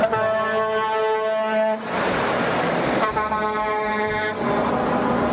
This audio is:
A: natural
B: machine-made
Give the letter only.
B